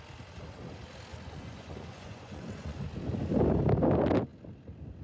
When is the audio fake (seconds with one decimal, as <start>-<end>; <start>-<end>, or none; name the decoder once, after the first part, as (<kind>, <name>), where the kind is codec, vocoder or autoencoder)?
1.1-2.8 (vocoder, Vocos)